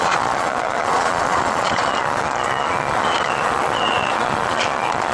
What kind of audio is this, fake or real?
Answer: fake